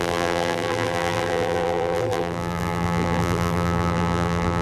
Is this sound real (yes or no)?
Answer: no